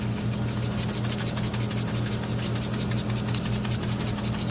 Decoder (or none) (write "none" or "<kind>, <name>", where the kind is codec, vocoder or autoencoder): none